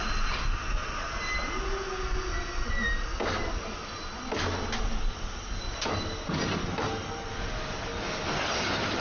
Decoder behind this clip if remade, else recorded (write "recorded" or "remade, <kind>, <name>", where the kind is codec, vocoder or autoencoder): recorded